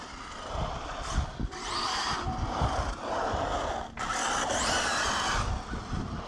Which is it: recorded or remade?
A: remade